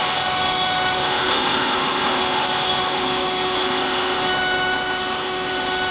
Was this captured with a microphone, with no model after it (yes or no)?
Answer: no